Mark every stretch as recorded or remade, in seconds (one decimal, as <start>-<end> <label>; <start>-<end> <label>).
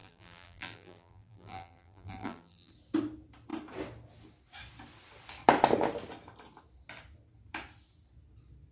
0.0-2.7 remade; 2.7-8.7 recorded